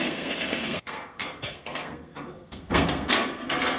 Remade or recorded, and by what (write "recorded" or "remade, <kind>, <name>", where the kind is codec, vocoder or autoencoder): remade, codec, SNAC